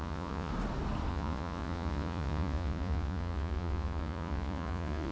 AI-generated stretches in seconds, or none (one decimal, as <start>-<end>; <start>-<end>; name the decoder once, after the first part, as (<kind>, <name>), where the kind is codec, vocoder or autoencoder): 0.0-0.5 (vocoder, Vocos); 1.1-5.1

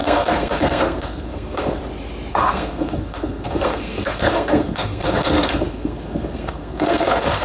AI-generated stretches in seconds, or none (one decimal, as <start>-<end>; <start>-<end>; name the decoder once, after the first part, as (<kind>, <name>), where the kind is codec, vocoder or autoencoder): 0.0-1.8 (codec, SNAC); 2.3-7.4

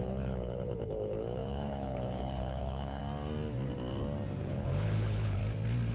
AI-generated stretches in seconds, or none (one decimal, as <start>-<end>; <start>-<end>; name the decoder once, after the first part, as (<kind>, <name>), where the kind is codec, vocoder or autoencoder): 0.0-3.0 (codec, HILCodec); 4.4-5.4

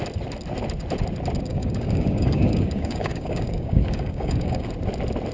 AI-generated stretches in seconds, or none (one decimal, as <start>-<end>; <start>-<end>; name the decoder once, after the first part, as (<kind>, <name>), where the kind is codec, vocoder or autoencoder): 1.5-4.7 (codec, DAC)